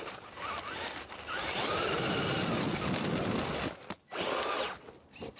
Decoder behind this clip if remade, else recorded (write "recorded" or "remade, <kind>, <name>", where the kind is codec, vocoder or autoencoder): recorded